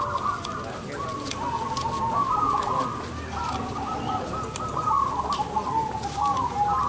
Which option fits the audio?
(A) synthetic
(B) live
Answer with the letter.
B